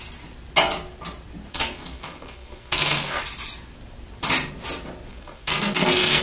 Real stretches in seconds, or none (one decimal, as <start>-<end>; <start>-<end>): 0.0-1.5; 3.2-5.1